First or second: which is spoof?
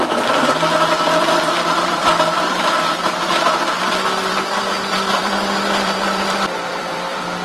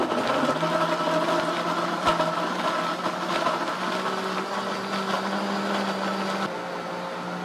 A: first